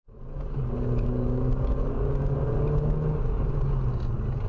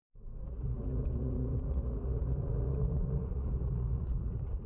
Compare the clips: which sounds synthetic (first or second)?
second